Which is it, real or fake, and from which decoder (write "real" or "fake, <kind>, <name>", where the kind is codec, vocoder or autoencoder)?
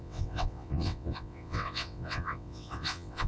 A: fake, vocoder, WaveNeXt